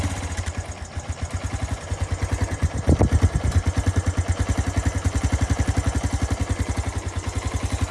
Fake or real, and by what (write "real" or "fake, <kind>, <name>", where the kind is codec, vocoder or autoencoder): real